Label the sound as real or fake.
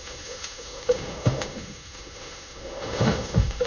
fake